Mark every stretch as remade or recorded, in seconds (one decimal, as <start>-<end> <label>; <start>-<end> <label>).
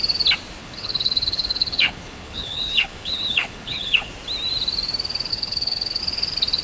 0.0-0.6 recorded; 0.6-4.1 remade; 4.1-5.3 recorded; 5.3-6.0 remade; 6.0-6.6 recorded